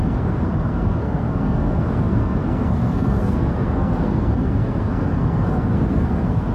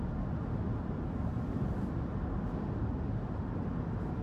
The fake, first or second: first